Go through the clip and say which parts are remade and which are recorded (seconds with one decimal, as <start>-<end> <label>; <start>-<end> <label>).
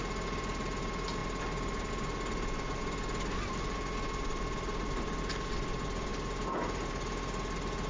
0.0-7.9 recorded